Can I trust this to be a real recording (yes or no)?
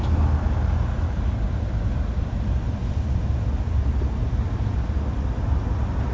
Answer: yes